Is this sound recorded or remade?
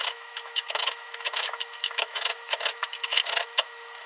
remade